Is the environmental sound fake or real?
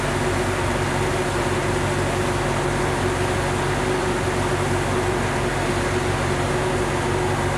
real